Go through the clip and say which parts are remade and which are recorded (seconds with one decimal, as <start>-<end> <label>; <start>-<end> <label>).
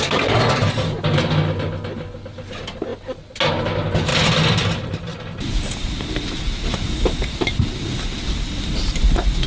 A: 0.0-4.1 recorded; 4.1-8.4 remade; 8.4-9.5 recorded